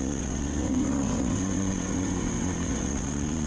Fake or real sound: fake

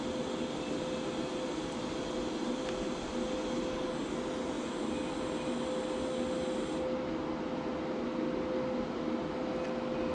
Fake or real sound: real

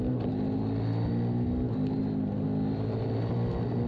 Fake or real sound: real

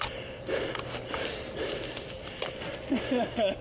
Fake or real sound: real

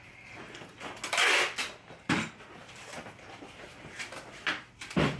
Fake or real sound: real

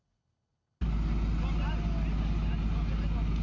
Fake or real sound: real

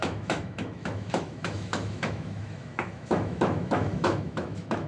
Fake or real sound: fake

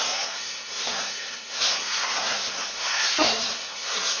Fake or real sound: fake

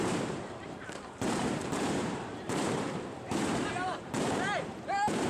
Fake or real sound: fake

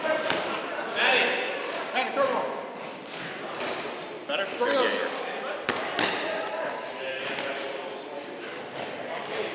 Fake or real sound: real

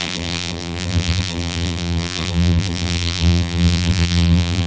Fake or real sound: fake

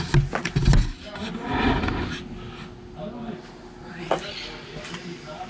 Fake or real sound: real